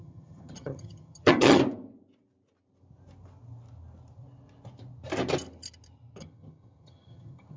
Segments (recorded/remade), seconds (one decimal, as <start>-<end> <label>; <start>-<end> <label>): 0.0-1.6 remade; 1.6-6.2 recorded; 6.2-7.6 remade